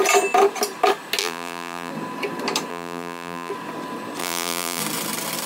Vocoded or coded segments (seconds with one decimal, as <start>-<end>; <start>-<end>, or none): 1.2-1.9; 2.7-3.5; 4.2-4.8